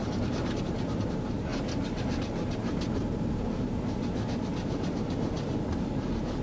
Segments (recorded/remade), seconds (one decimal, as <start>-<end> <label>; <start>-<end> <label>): 0.0-1.5 remade; 1.5-2.2 recorded; 2.2-6.4 remade